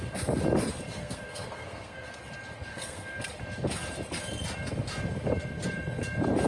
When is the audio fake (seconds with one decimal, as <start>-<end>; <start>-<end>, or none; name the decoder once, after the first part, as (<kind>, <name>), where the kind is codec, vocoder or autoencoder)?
0.9-2.2 (codec, SNAC); 2.7-3.3